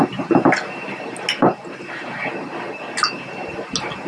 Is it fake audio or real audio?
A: real